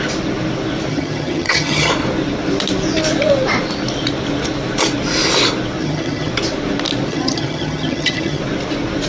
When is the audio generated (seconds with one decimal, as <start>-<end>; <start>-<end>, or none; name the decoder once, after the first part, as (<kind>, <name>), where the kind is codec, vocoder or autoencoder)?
0.9-1.9 (vocoder, HiFi-GAN); 5.8-6.3; 7.1-8.4